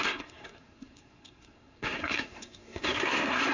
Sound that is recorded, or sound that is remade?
remade